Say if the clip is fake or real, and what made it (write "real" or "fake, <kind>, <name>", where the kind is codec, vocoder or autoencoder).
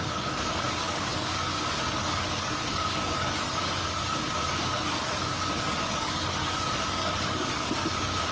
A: fake, codec, DAC